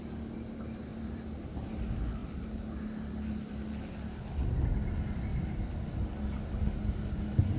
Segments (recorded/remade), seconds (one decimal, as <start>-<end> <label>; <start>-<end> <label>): 0.0-0.9 recorded; 0.9-1.5 remade; 1.5-5.3 recorded; 5.3-6.4 remade; 6.4-7.6 recorded